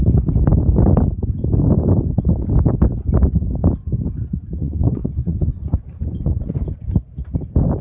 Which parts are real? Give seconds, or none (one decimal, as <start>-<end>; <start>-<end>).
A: 0.0-4.6; 6.6-7.8